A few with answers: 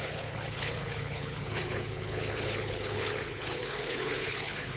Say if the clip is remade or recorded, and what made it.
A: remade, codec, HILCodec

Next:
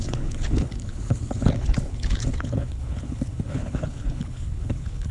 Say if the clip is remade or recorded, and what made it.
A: remade, codec, HILCodec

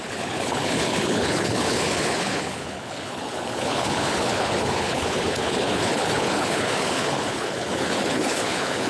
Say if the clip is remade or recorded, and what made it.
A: remade, codec, HILCodec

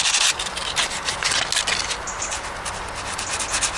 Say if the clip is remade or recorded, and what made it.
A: recorded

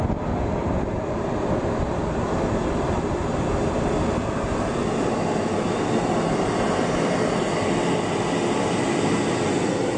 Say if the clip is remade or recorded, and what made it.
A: recorded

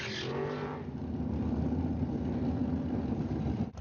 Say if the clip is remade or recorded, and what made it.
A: recorded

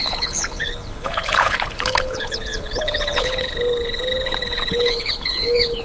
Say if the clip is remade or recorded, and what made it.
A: remade, codec, HILCodec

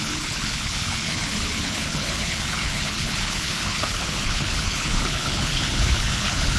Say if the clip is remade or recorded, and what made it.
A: remade, codec, HILCodec